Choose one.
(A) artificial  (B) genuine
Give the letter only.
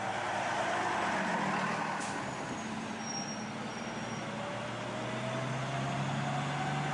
B